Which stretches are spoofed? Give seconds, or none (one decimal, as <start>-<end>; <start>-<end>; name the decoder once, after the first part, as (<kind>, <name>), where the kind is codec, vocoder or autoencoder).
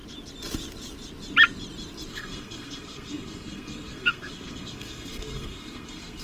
2.1-6.2 (codec, SNAC)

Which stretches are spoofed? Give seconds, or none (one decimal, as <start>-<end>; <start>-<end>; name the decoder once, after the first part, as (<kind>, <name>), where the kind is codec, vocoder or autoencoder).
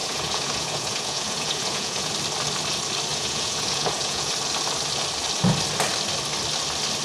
0.0-2.1 (vocoder, Vocos); 3.1-4.3